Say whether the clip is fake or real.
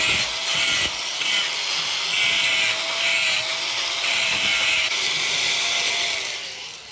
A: real